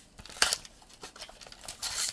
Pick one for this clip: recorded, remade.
recorded